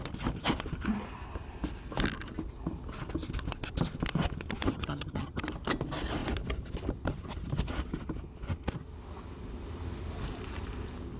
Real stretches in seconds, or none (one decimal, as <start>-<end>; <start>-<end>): 0.0-4.7; 5.4-11.2